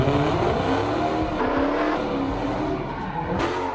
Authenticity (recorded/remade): recorded